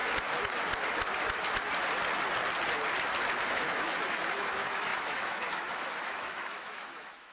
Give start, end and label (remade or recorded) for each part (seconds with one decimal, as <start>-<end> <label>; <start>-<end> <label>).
0.0-3.5 recorded; 3.5-7.3 remade